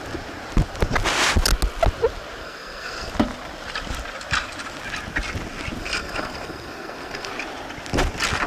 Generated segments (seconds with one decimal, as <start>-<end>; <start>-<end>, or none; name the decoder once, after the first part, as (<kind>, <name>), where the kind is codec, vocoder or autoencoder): 2.4-3.1 (codec, SNAC); 5.8-7.3